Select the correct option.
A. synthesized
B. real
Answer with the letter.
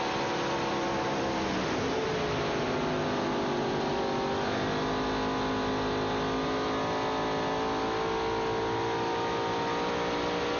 B